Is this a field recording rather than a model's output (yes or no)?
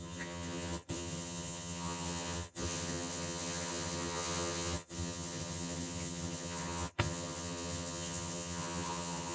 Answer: no